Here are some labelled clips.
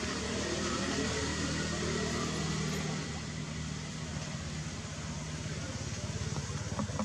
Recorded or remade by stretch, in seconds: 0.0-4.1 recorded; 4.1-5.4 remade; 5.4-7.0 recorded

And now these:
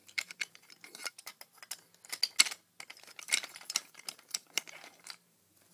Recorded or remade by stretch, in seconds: 0.0-1.3 remade; 1.3-3.3 recorded; 3.3-5.7 remade